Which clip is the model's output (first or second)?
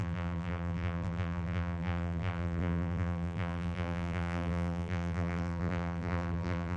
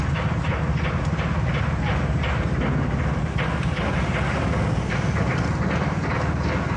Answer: first